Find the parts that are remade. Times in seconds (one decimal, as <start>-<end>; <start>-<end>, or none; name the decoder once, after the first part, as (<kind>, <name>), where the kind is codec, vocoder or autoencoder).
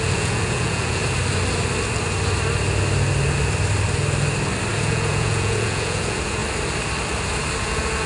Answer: 0.0-1.0 (vocoder, Vocos); 4.8-6.4; 7.6-8.1